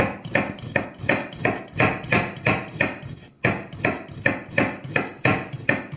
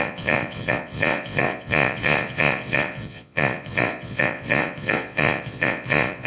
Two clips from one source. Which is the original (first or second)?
first